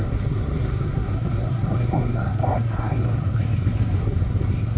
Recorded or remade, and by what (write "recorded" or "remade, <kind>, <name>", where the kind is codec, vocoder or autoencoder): remade, codec, SNAC